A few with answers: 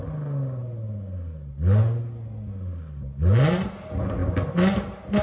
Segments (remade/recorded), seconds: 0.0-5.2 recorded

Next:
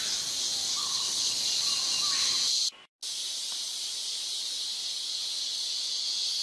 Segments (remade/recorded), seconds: 0.0-0.8 recorded; 0.8-1.4 remade; 1.4-6.4 recorded

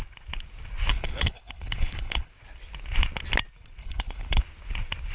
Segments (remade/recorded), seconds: 0.0-0.9 recorded; 0.9-2.3 remade; 2.3-3.8 recorded; 3.8-4.4 remade; 4.4-5.1 recorded